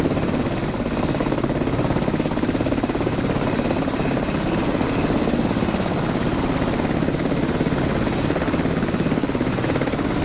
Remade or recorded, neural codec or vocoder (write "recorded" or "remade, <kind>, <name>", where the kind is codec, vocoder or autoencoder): recorded